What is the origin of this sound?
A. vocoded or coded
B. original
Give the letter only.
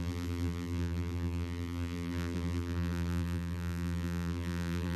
A